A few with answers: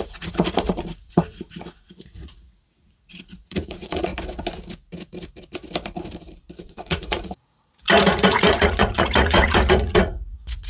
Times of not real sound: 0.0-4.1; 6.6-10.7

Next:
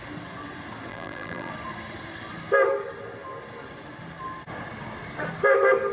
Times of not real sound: 0.9-1.5

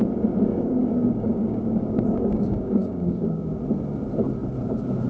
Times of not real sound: 0.5-3.6

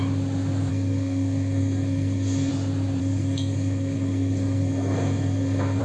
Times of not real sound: 0.7-2.5; 3.0-5.8

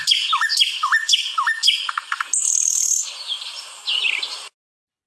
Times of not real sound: none